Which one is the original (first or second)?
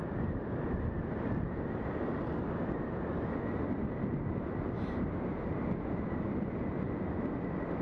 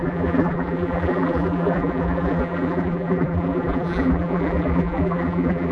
first